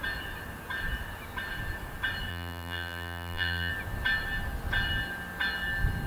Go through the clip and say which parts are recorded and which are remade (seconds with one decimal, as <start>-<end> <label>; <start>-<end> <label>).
0.0-2.3 recorded; 2.3-3.7 remade; 3.7-6.1 recorded